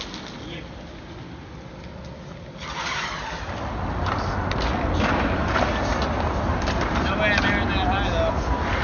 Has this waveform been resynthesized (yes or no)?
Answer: no